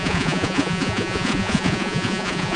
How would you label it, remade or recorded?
remade